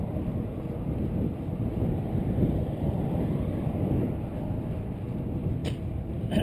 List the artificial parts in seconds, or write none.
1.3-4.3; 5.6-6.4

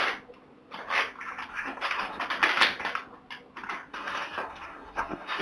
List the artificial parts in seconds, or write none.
1.5-2.2; 3.9-5.4

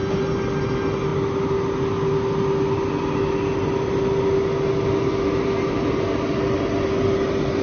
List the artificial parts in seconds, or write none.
none

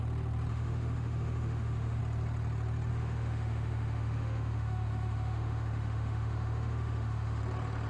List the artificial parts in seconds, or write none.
0.5-2.0; 2.9-7.4

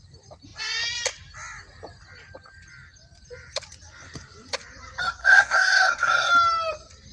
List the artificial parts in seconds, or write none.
5.2-6.3